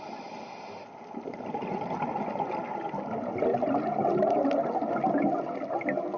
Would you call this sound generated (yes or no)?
no